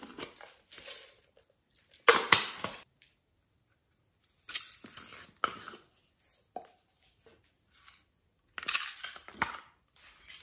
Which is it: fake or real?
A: real